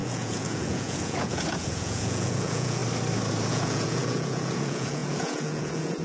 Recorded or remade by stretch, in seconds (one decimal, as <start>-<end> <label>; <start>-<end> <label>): 0.0-2.8 remade; 2.8-3.5 recorded; 3.5-6.0 remade